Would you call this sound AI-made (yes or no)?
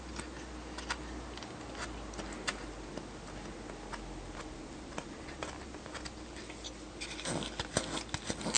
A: no